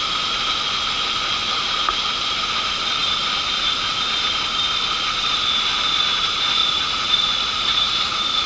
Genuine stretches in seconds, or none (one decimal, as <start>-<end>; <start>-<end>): 0.0-6.6